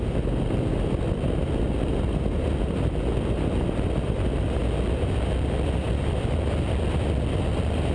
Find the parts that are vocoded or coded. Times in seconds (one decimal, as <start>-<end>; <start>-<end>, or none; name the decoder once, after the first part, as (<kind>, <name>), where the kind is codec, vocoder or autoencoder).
none